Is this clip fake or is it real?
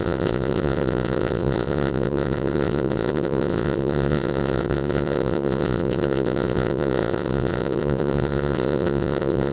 fake